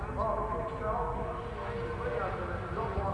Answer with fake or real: real